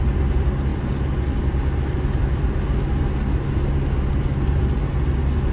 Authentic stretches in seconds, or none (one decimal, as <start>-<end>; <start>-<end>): 0.0-5.5